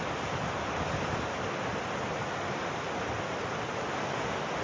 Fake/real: real